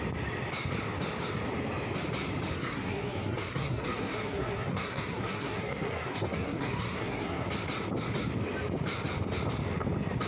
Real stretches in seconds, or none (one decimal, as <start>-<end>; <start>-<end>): 0.0-2.5; 7.5-10.3